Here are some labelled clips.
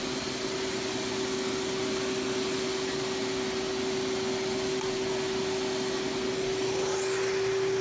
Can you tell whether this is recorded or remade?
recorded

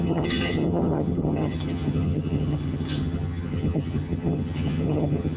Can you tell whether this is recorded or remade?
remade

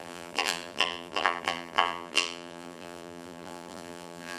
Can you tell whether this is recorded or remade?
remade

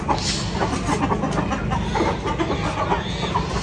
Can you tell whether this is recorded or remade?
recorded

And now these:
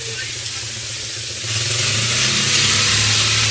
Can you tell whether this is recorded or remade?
recorded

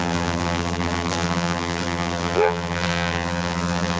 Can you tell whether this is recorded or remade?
remade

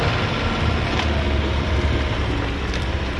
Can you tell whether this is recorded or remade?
remade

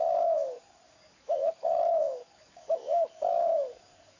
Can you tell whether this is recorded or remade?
remade